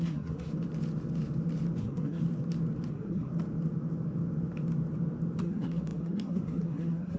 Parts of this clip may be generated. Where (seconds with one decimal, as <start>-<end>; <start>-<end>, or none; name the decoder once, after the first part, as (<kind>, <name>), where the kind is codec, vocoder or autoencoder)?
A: 0.0-0.5 (codec, SNAC); 1.8-2.2; 2.9-3.3; 5.4-7.2